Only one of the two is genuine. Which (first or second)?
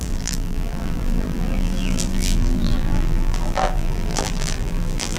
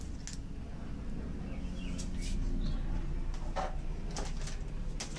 second